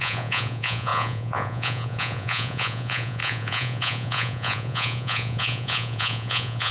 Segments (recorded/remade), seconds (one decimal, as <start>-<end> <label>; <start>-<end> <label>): 0.0-6.7 remade

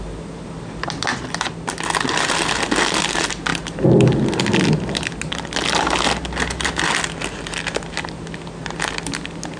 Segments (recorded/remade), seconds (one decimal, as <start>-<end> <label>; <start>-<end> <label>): 0.0-9.6 recorded

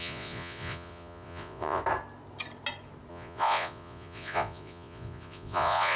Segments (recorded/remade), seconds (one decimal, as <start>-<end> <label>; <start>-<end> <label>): 0.0-1.8 remade; 1.8-3.1 recorded; 3.1-6.0 remade

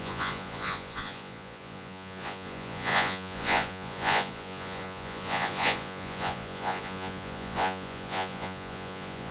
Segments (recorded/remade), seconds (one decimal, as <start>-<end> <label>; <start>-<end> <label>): 0.0-9.3 remade